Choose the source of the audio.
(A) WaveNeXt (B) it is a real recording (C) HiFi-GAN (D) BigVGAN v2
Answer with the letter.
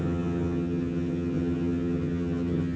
C